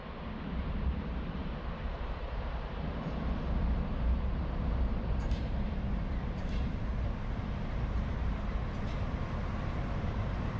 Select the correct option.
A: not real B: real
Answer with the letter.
A